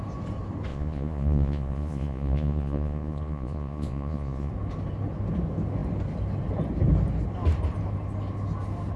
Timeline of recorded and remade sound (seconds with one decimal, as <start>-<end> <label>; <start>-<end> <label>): 0.0-0.7 recorded; 0.7-4.5 remade; 4.5-9.0 recorded